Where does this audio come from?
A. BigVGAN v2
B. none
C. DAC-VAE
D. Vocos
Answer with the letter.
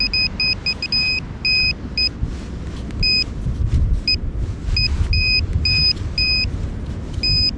B